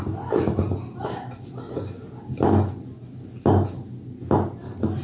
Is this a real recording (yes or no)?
yes